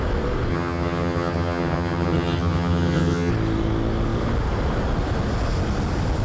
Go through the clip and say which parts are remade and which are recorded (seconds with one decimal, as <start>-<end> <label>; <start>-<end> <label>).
0.0-0.5 recorded; 0.5-3.3 remade; 3.3-6.2 recorded